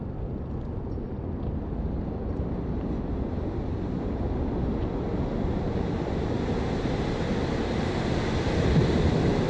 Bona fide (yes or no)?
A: yes